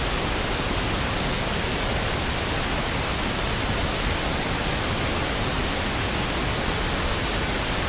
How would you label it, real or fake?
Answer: real